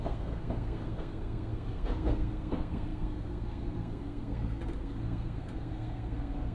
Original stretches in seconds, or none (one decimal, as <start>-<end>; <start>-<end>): none

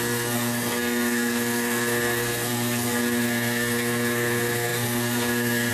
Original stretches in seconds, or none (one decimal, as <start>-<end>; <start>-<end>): none